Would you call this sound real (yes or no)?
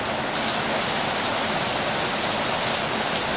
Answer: yes